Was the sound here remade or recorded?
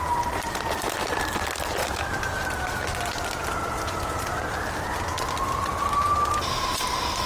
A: recorded